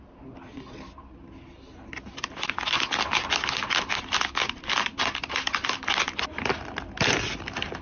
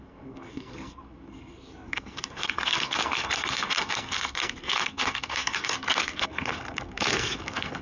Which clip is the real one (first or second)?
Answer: first